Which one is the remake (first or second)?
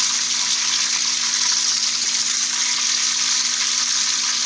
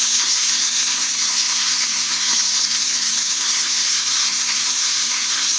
second